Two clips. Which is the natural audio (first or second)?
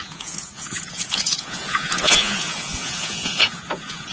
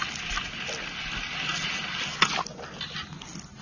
second